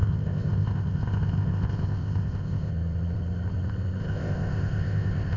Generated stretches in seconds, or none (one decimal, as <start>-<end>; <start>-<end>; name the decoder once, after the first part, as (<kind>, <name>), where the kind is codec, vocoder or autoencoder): 0.0-2.7 (codec, ZipCodec); 4.0-5.4